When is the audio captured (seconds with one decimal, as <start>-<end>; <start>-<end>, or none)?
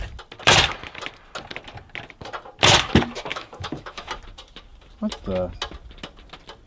0.0-3.3; 4.1-6.7